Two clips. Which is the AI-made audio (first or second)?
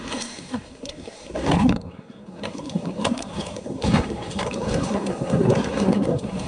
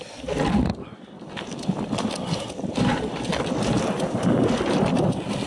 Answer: first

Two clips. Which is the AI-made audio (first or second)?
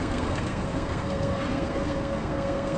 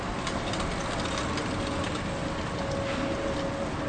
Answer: first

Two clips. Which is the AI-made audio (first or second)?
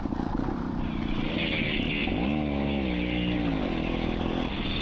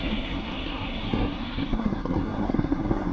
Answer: second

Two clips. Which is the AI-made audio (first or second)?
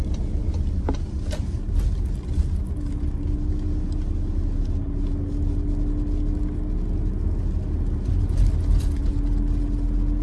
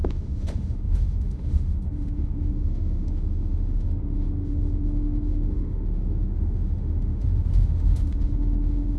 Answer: second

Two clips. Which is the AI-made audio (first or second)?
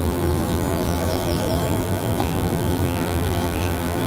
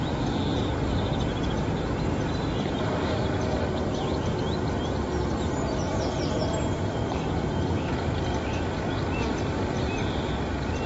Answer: first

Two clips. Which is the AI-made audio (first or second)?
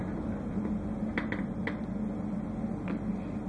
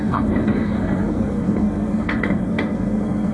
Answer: second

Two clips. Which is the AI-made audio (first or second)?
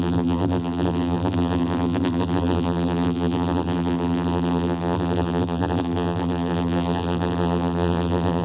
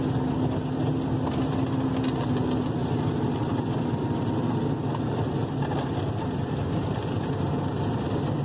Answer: first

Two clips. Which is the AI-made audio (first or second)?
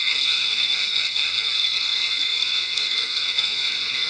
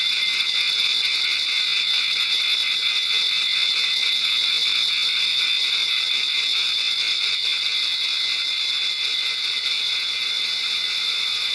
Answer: first